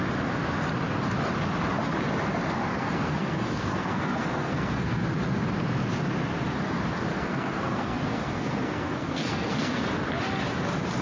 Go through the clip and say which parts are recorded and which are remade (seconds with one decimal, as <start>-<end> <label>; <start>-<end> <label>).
0.0-2.7 recorded; 2.7-5.0 remade; 5.0-7.1 recorded; 7.1-9.9 remade; 9.9-11.0 recorded